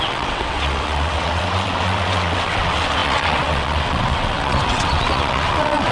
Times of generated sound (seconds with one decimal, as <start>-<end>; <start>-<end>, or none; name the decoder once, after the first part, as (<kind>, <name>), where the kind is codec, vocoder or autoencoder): 0.0-5.9 (vocoder, WaveNeXt)